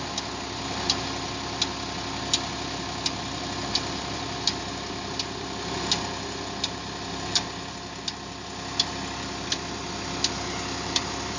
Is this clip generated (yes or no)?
no